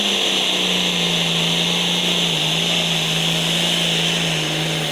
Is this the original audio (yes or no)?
yes